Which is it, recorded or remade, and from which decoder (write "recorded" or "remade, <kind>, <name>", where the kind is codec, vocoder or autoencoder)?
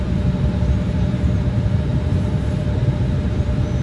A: remade, vocoder, BigVGAN v2